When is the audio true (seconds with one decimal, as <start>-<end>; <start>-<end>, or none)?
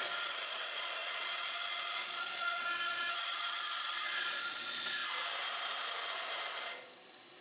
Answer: 5.0-7.4